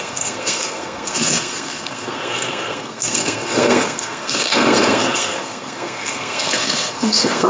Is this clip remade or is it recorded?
remade